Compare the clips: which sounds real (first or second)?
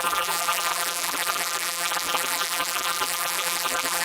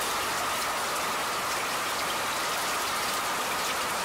second